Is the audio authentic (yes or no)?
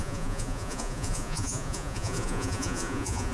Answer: no